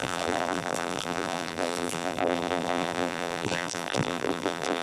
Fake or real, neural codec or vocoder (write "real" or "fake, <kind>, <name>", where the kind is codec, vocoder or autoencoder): fake, vocoder, BigVGAN v2